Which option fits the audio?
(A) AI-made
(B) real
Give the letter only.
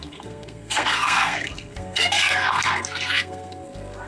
A